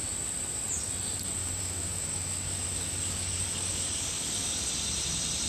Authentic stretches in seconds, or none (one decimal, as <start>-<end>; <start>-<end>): 0.0-1.4; 4.7-5.5